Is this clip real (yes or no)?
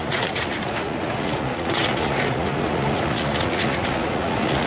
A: no